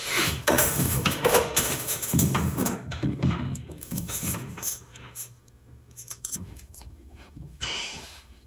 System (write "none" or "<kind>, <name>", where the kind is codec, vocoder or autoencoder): autoencoder, DAC-VAE